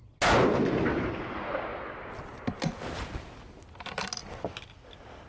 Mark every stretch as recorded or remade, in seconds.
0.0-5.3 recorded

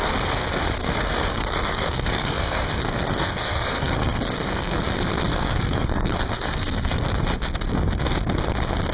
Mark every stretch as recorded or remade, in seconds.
0.0-0.8 recorded; 0.8-4.8 remade; 4.8-5.3 recorded; 5.3-7.0 remade; 7.0-8.9 recorded